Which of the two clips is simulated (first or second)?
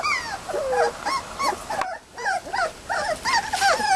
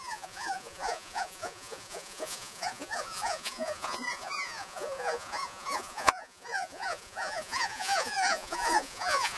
second